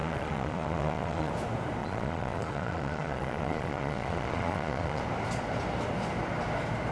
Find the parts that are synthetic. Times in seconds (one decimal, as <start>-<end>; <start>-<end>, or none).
0.0-1.3; 1.8-5.0